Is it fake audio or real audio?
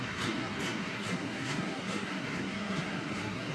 fake